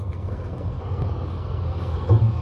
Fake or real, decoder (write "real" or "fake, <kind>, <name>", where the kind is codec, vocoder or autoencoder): fake, codec, SNAC